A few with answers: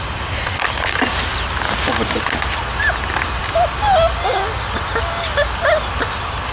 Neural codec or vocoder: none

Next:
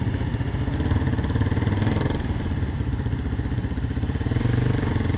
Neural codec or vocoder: none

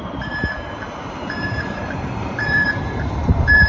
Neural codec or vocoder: vocoder, BigVGAN v2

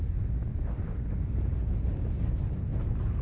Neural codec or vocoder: vocoder, BigVGAN v2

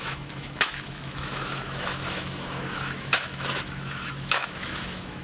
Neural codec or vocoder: autoencoder, DAC-VAE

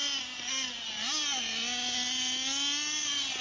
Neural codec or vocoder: none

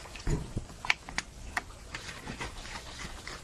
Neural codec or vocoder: vocoder, Vocos